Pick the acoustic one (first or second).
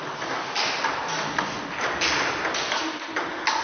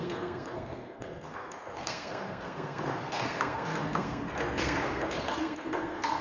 first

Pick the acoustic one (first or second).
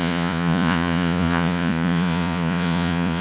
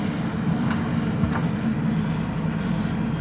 second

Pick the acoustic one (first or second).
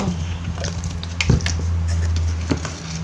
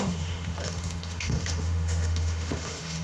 first